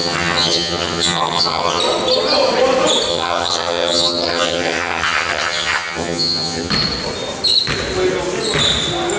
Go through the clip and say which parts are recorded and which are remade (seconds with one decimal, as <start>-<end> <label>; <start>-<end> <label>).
0.0-1.8 remade; 1.8-3.1 recorded; 3.1-6.7 remade; 6.7-9.2 recorded